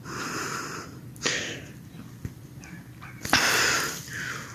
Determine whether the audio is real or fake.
real